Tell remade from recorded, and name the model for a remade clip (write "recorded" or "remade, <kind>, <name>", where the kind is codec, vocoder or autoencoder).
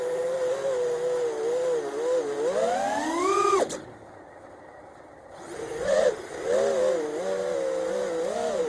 recorded